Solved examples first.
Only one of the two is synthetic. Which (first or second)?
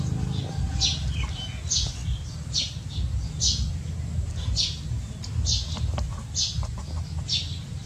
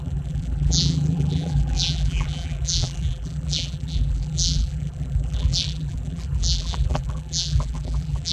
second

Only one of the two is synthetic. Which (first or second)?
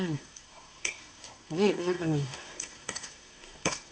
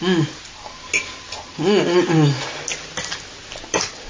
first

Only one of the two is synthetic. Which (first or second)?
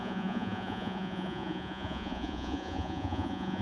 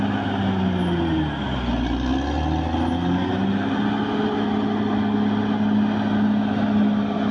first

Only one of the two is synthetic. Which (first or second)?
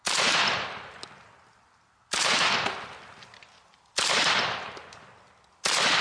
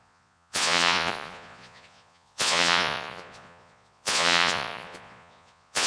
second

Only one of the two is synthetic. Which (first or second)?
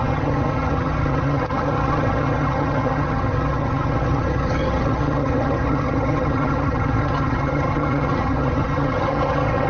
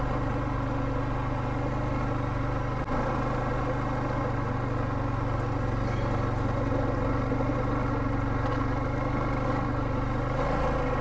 first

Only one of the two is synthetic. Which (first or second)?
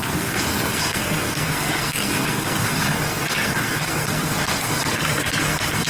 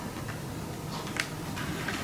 first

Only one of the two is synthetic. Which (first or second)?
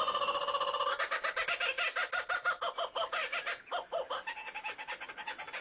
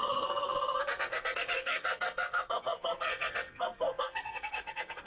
second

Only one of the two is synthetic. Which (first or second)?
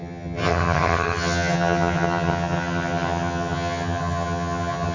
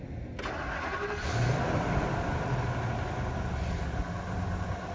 first